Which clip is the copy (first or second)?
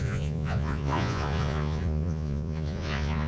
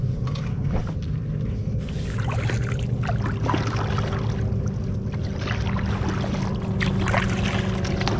first